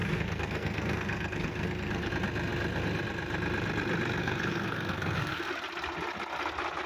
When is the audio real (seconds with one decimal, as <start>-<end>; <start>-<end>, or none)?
2.1-4.2; 5.5-6.9